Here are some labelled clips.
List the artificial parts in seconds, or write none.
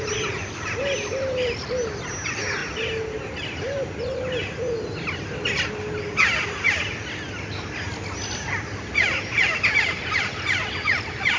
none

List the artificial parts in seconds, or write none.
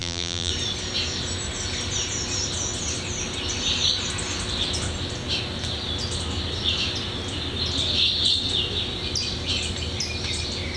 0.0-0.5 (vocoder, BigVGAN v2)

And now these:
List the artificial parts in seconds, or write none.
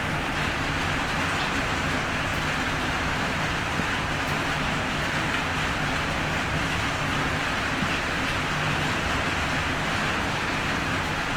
none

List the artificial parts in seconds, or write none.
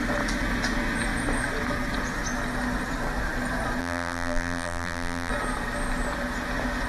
3.8-5.3 (vocoder, BigVGAN v2)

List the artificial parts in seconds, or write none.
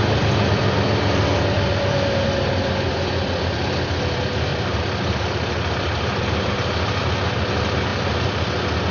4.5-6.5 (vocoder, BigVGAN v2)